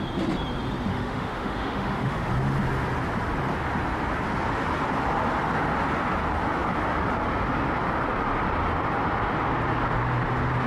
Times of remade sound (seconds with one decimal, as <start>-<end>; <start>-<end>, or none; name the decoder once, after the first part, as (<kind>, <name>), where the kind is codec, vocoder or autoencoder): 0.9-2.3 (autoencoder, DAC-VAE)